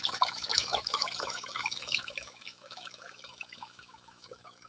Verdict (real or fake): fake